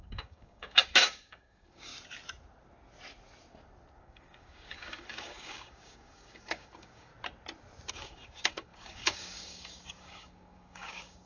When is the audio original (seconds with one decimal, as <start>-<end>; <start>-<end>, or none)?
1.9-4.0; 7.1-7.9